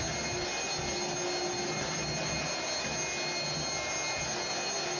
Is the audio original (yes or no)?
yes